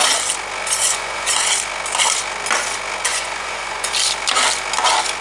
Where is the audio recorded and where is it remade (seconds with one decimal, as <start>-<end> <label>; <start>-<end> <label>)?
0.0-0.8 recorded; 0.8-1.4 remade; 1.4-3.1 recorded; 3.1-3.9 remade; 3.9-5.2 recorded